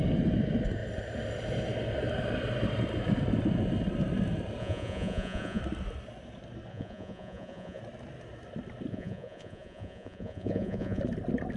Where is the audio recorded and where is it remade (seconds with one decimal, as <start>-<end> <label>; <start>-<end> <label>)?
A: 0.0-4.6 recorded; 4.6-5.6 remade; 5.6-6.7 recorded; 6.7-7.8 remade; 7.8-8.9 recorded; 8.9-11.0 remade; 11.0-11.6 recorded